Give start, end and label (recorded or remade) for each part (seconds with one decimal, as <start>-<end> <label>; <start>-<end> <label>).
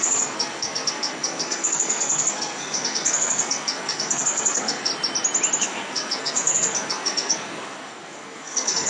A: 0.0-4.9 remade; 4.9-5.6 recorded; 5.6-8.9 remade